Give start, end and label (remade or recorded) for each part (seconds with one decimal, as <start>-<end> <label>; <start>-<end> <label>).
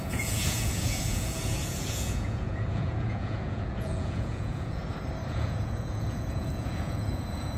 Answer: 0.0-4.8 remade; 4.8-5.3 recorded; 5.3-7.6 remade